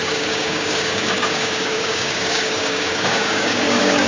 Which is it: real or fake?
fake